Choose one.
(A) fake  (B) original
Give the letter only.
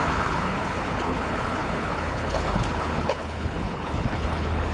A